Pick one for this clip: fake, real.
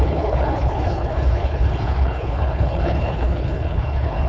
fake